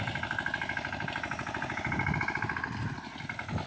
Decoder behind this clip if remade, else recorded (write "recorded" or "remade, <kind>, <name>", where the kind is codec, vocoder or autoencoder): recorded